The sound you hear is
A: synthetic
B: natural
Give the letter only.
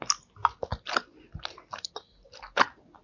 B